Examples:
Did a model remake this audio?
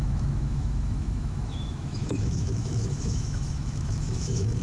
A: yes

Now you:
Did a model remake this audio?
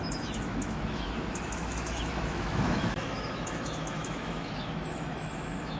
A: yes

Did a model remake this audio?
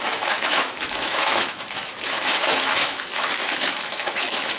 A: yes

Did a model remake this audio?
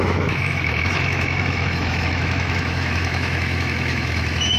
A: yes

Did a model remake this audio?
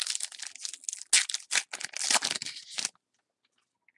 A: no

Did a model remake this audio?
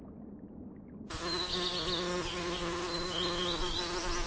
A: no